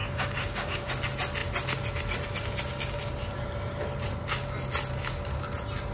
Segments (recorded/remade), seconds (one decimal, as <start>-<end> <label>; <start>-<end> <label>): 0.0-0.9 remade; 0.9-5.9 recorded